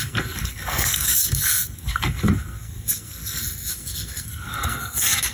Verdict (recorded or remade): remade